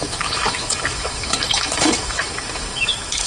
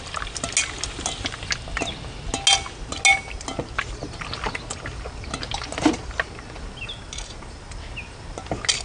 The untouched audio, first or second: second